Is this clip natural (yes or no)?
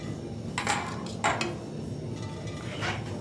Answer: yes